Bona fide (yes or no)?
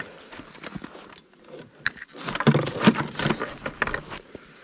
yes